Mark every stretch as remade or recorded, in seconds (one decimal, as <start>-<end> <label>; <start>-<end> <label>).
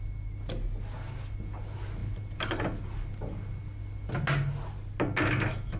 0.0-5.8 recorded